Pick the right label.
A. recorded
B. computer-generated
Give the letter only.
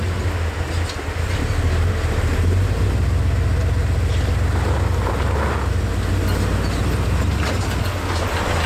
A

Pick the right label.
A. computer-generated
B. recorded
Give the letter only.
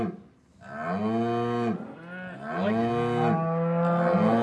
B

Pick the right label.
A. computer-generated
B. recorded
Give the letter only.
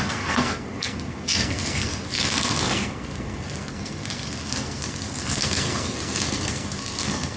A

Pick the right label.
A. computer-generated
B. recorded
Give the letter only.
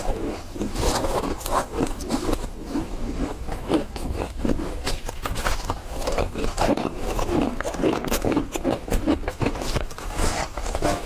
A